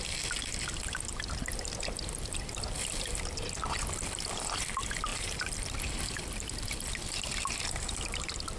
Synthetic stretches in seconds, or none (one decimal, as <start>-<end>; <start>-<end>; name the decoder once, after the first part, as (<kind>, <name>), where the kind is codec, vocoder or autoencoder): 5.1-6.9 (vocoder, BigVGAN v2)